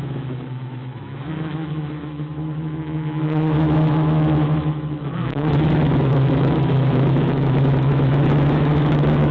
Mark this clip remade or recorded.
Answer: remade